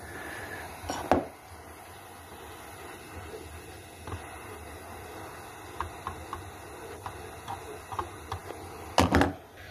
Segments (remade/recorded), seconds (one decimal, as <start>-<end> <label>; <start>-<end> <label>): 0.0-9.7 recorded